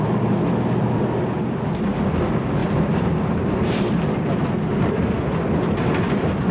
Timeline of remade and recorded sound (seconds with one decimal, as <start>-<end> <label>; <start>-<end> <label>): 0.0-2.6 recorded; 2.6-3.9 remade; 3.9-6.5 recorded